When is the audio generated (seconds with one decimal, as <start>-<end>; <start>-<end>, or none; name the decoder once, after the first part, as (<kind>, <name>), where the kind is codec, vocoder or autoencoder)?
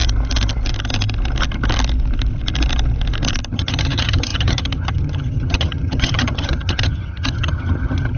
3.5-8.2 (vocoder, HiFi-GAN)